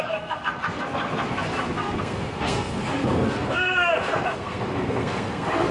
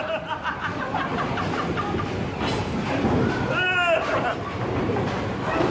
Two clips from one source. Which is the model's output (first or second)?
first